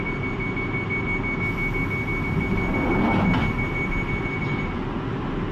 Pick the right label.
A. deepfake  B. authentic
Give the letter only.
B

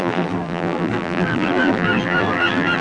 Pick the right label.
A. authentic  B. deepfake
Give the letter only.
B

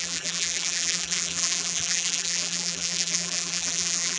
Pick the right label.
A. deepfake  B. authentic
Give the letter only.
A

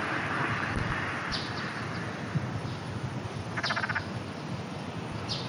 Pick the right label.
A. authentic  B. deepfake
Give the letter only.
A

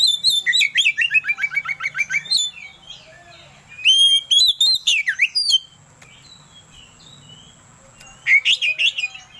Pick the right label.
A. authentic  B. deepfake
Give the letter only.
A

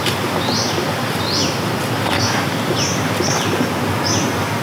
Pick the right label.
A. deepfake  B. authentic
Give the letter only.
B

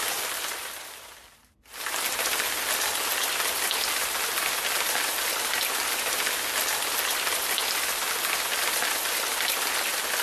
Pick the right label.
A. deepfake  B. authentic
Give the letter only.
B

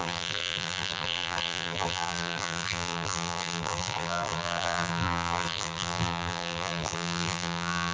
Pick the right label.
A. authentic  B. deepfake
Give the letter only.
B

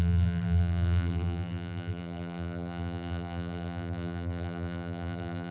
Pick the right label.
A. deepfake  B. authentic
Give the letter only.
A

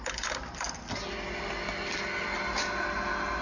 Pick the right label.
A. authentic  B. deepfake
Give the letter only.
A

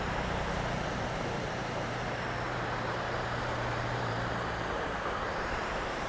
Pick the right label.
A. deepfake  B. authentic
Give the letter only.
A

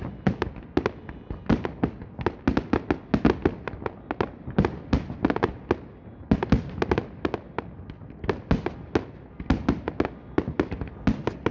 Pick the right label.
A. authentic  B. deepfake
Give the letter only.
A